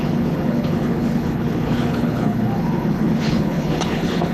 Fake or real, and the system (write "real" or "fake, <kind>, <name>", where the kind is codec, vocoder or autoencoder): fake, codec, HILCodec